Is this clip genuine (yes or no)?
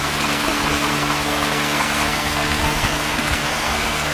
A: no